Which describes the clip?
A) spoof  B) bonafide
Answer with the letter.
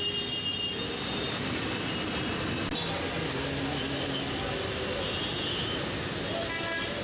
B